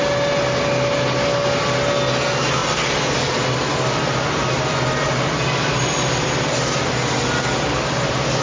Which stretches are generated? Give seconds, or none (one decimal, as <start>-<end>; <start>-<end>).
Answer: none